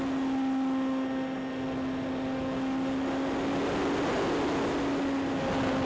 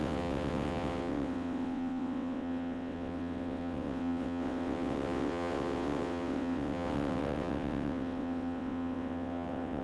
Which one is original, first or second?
first